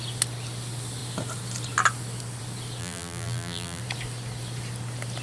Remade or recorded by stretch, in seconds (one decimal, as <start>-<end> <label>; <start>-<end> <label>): 0.0-2.8 recorded; 2.8-3.8 remade; 3.8-5.2 recorded